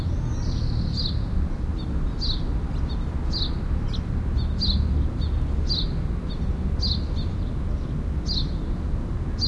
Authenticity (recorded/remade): recorded